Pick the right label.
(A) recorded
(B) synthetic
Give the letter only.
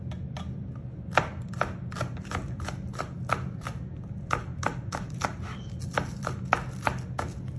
A